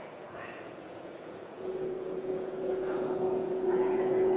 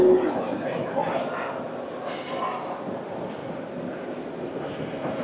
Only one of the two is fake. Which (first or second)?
first